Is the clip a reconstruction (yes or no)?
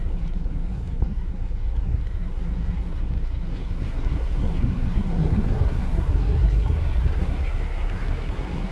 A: yes